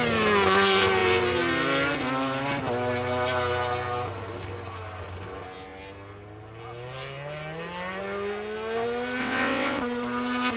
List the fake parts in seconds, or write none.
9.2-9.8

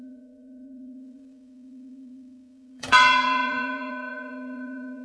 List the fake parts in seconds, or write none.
0.0-5.0

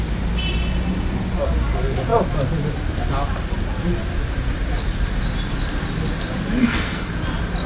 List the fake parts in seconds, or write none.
6.6-7.1

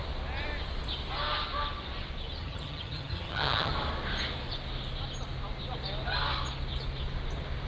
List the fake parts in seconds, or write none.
2.4-3.7